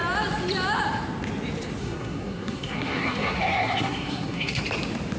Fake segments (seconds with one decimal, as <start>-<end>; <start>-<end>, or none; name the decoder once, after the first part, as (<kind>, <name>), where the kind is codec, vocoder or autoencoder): 1.8-4.6 (codec, SNAC)